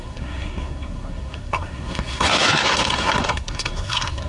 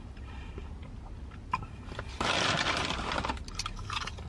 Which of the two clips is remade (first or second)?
first